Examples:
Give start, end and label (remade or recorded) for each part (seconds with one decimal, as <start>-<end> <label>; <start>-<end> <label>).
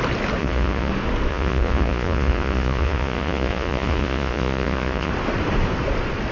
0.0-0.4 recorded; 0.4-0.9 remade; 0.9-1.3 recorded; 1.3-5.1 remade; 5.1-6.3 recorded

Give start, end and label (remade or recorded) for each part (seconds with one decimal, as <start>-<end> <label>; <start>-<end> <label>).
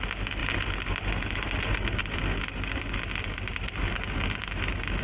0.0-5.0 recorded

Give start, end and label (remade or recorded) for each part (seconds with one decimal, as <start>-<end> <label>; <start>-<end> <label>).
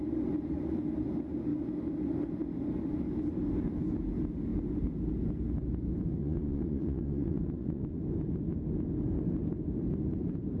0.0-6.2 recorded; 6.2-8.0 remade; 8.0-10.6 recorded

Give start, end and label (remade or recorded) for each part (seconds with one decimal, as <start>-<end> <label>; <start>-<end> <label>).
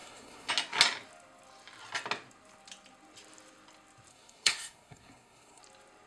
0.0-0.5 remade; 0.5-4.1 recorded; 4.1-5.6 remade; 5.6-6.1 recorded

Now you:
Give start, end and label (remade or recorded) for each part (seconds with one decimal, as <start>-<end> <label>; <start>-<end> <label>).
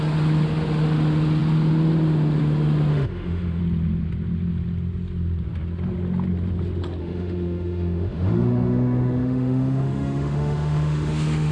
0.0-2.9 recorded; 2.9-3.6 remade; 3.6-7.0 recorded; 7.0-11.5 remade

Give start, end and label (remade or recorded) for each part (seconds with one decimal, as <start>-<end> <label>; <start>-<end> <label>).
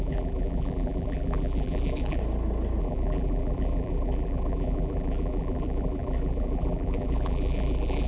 0.0-2.2 remade; 2.2-2.8 recorded; 2.8-8.1 remade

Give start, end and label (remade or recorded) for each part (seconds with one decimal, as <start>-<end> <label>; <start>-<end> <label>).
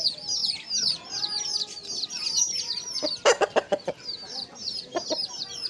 0.0-5.7 recorded